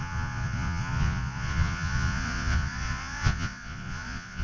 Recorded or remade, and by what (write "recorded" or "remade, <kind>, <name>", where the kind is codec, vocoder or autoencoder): remade, vocoder, Vocos